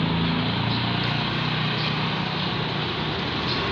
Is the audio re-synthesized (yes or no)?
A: no